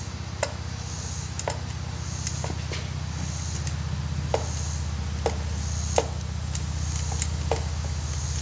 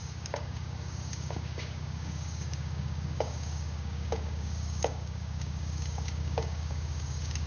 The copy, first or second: second